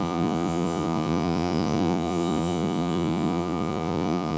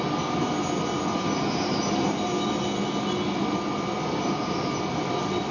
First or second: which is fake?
first